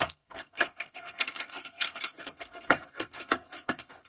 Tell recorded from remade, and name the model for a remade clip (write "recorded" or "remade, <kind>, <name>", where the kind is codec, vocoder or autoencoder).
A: remade, codec, SNAC